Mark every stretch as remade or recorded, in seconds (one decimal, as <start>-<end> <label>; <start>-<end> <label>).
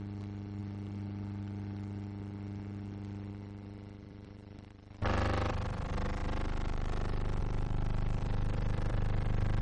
0.0-0.6 remade; 0.6-3.3 recorded; 3.3-6.2 remade; 6.2-7.4 recorded; 7.4-9.6 remade